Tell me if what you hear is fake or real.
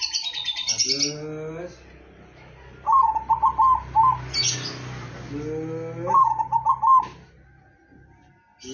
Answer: real